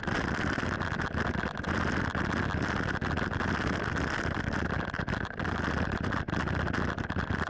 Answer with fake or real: real